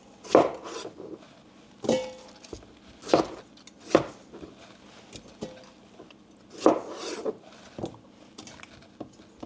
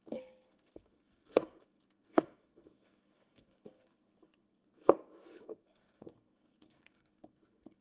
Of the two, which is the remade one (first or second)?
second